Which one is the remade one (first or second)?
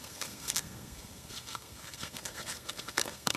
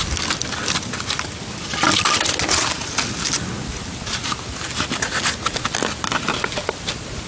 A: first